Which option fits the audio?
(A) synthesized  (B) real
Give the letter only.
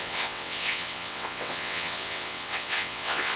A